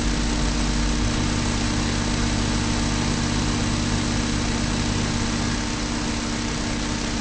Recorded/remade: recorded